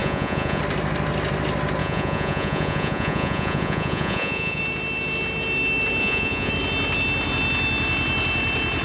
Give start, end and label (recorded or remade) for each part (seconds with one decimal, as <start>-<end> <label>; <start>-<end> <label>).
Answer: 0.0-0.6 remade; 0.6-1.8 recorded; 1.8-4.6 remade; 4.6-6.0 recorded; 6.0-6.5 remade; 6.5-8.8 recorded